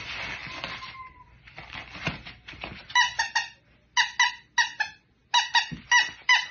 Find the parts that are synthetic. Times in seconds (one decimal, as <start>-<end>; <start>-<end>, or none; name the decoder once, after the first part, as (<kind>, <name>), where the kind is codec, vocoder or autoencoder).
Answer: none